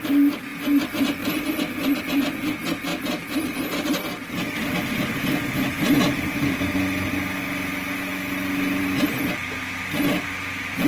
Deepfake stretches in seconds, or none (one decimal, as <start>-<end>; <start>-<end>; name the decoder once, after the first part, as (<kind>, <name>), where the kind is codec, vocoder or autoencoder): 0.0-2.9 (vocoder, BigVGAN v2); 6.6-10.9